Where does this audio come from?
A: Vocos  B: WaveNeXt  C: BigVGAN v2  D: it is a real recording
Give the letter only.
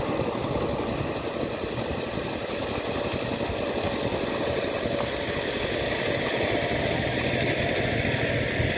D